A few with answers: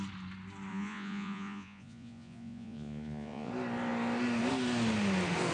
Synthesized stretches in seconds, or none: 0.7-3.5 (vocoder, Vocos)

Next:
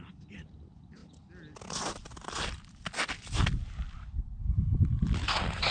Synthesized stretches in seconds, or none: none

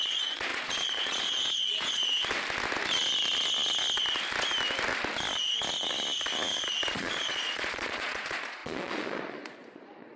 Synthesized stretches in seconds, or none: 0.0-2.0 (vocoder, Vocos); 6.9-10.2

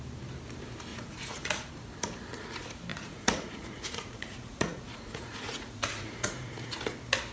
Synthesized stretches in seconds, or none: 0.9-1.7 (vocoder, Vocos); 2.9-6.8